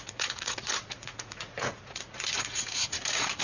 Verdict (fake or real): fake